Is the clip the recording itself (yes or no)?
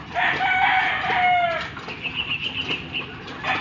yes